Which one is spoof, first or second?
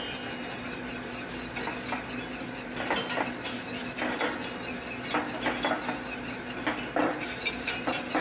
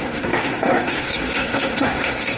second